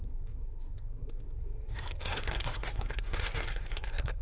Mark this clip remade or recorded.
remade